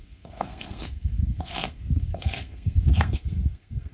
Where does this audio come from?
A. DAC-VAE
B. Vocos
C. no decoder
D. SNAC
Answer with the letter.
D